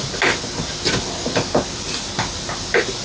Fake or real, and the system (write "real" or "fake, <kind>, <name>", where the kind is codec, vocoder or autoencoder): real